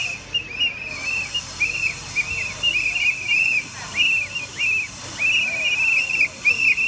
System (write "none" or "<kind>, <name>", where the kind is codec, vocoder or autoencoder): none